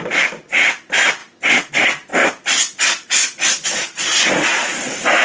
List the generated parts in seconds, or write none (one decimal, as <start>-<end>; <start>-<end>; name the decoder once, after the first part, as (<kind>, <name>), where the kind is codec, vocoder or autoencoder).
none